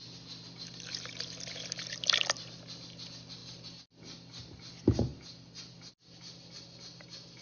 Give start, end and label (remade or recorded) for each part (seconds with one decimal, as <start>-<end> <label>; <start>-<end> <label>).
0.0-7.4 recorded